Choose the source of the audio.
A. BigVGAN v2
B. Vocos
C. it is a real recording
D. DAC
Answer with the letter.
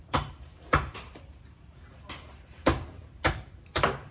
A